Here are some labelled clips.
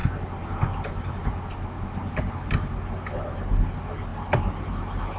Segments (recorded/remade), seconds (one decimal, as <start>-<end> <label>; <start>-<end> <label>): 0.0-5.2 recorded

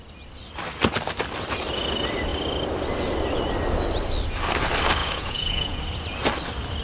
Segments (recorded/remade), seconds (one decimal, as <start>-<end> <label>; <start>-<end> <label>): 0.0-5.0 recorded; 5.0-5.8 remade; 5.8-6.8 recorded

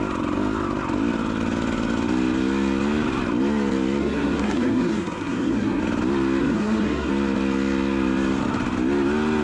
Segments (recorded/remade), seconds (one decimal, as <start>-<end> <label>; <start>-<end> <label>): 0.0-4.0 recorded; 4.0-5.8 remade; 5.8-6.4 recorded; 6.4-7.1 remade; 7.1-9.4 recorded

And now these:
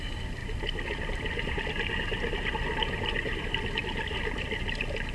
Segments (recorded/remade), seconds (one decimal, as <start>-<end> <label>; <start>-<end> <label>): 0.0-5.1 recorded

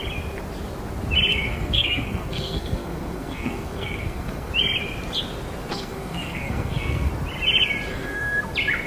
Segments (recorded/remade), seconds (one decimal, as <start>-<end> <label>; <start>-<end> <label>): 0.0-1.3 recorded; 1.3-4.5 remade; 4.5-5.7 recorded; 5.7-7.1 remade; 7.1-7.9 recorded; 7.9-8.4 remade; 8.4-8.9 recorded

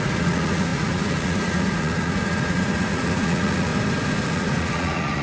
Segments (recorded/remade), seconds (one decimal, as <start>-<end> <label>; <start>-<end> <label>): 0.0-3.7 remade; 3.7-4.3 recorded; 4.3-5.2 remade

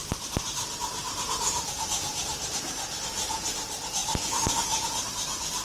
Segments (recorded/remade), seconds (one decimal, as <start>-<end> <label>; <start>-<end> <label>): 0.0-5.6 remade